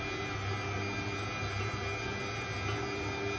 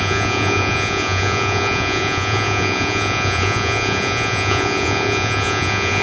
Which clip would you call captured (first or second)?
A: first